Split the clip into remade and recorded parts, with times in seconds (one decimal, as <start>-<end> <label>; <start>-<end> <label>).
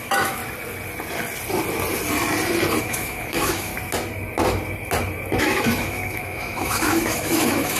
0.0-0.4 remade; 0.4-2.8 recorded; 2.8-3.7 remade; 3.7-5.4 recorded; 5.4-7.8 remade